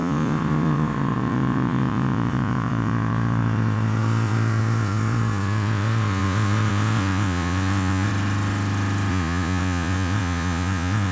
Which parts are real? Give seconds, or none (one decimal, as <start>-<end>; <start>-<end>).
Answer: 8.1-9.1